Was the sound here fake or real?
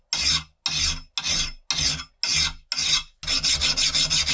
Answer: real